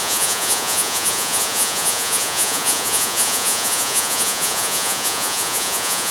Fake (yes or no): yes